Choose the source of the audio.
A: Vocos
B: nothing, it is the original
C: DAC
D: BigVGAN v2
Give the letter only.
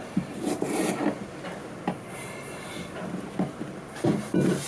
B